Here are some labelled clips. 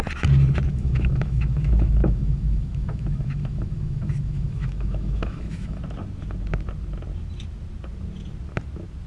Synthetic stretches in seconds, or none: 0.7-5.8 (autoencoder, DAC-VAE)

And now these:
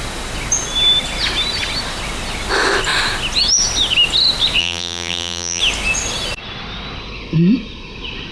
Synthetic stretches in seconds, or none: 4.6-5.6 (vocoder, BigVGAN v2)

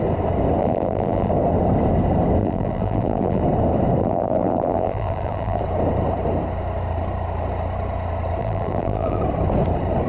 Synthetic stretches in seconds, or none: 0.6-1.3 (vocoder, BigVGAN v2); 2.4-3.4; 4.0-5.6; 8.4-9.2

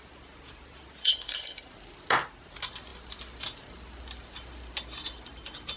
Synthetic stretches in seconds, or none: 1.0-1.7 (codec, HILCodec)

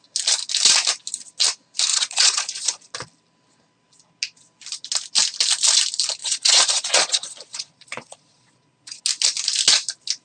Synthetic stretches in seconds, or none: 1.9-2.9 (vocoder, Vocos); 6.2-9.0

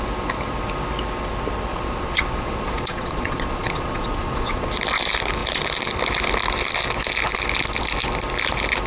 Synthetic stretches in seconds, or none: 1.7-4.7 (vocoder, Vocos)

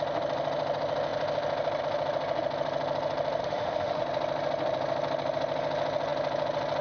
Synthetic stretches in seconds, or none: 3.4-4.0 (autoencoder, DAC-VAE)